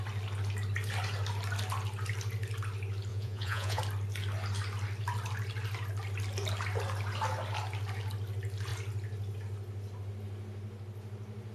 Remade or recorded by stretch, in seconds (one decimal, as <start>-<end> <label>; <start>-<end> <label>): 0.0-3.1 recorded; 3.1-3.8 remade; 3.8-11.5 recorded

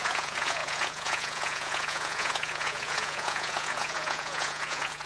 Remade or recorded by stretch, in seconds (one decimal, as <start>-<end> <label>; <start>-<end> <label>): 0.0-5.1 remade

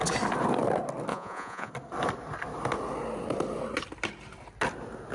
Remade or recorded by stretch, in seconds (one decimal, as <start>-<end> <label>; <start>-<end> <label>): 0.0-1.1 recorded; 1.1-1.7 remade; 1.7-5.1 recorded